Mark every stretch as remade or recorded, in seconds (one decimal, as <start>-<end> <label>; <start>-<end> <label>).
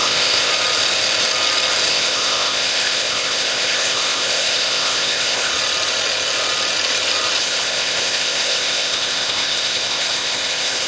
0.0-0.5 remade; 0.5-1.9 recorded; 1.9-5.5 remade; 5.5-7.4 recorded; 7.4-10.9 remade